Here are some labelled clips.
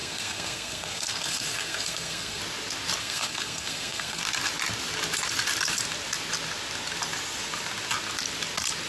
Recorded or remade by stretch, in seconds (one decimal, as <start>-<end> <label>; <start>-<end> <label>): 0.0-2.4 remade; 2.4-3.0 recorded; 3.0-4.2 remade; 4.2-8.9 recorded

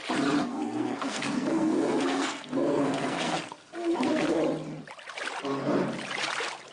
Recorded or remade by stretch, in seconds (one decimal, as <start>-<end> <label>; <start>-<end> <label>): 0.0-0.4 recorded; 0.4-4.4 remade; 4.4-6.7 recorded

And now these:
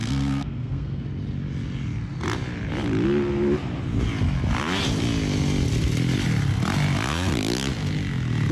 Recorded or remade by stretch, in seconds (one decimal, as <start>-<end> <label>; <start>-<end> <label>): 0.0-1.0 remade; 1.0-8.5 recorded